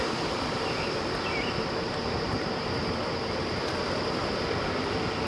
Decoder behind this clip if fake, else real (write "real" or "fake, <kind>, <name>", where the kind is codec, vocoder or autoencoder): fake, vocoder, BigVGAN v2